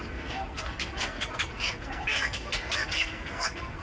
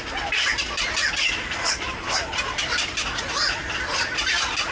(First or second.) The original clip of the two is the second